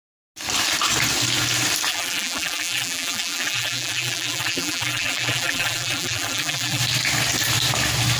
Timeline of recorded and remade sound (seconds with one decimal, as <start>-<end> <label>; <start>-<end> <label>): 0.0-1.9 recorded; 1.9-6.8 remade; 6.8-8.2 recorded